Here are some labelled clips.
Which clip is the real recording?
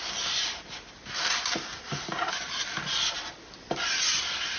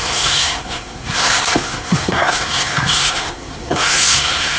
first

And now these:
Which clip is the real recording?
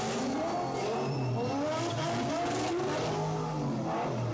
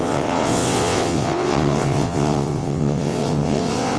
first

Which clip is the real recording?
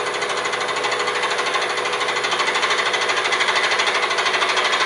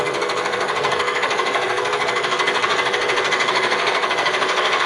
first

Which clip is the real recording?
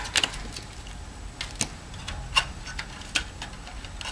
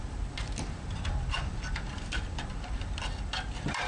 first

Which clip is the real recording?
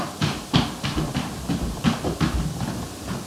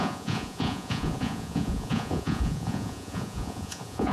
first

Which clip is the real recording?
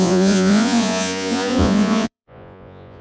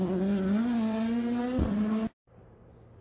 second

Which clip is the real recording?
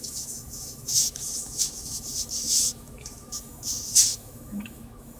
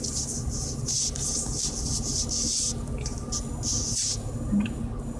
second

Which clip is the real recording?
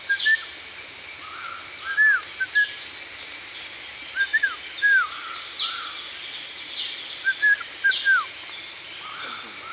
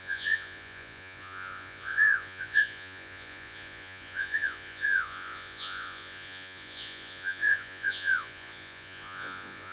first